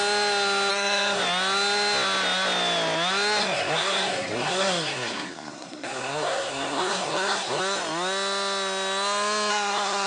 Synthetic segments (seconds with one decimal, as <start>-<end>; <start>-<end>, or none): 0.7-1.2; 3.4-7.6; 9.5-10.1